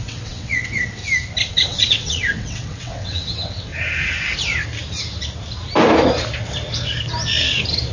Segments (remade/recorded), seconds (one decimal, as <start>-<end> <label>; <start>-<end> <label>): 0.0-1.0 remade; 1.0-1.5 recorded; 1.5-3.7 remade; 3.7-7.9 recorded